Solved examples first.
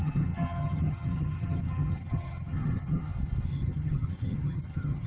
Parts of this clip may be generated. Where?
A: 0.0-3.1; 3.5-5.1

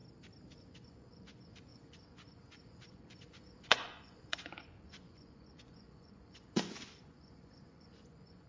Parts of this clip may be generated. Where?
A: 0.5-8.5

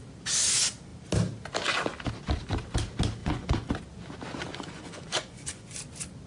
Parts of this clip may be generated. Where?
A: 3.2-3.7; 4.5-5.8

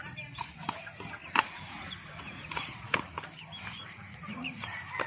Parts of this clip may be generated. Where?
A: 1.2-3.2; 3.8-4.6

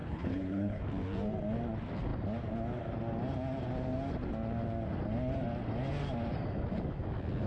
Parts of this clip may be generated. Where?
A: 0.0-0.8